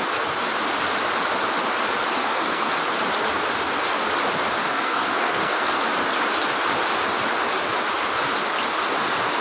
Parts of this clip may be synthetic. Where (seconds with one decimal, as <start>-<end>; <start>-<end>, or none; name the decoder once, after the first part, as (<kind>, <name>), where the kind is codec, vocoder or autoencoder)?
2.2-2.7 (codec, SNAC); 4.6-5.8